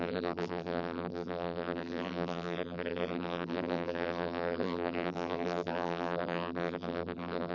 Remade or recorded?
remade